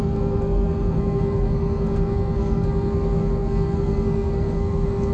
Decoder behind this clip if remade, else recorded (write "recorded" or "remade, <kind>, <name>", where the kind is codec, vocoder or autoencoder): remade, codec, SNAC